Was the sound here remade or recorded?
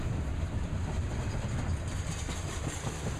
recorded